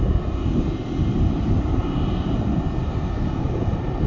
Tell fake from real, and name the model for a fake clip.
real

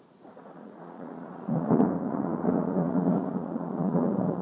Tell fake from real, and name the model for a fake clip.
fake, vocoder, Vocos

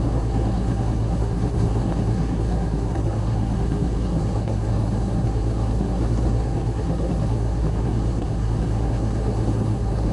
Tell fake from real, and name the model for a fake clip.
fake, codec, SNAC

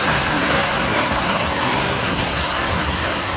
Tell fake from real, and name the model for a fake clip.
fake, codec, SNAC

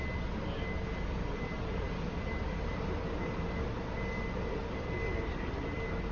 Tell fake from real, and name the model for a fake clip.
real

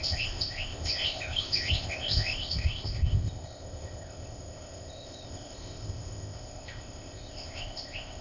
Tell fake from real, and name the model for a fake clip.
fake, codec, ZipCodec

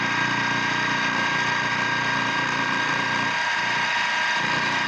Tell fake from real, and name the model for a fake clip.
real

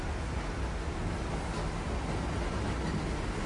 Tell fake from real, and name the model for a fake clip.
real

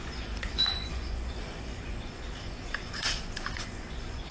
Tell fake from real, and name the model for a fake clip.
fake, vocoder, Vocos